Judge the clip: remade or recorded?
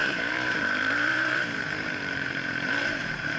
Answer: remade